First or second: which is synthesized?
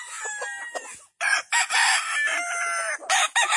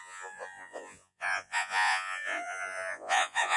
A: second